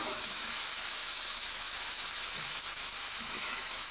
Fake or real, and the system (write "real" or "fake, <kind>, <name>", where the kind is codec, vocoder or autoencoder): fake, autoencoder, DAC-VAE